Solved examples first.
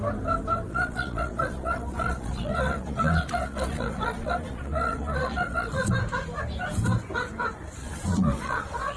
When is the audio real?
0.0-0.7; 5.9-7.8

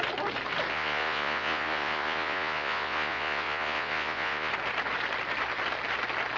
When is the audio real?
0.0-0.7; 4.5-6.4

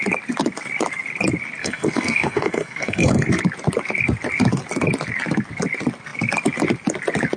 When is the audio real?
0.0-1.6; 3.3-7.4

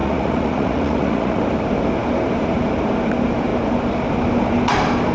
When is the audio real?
1.4-5.1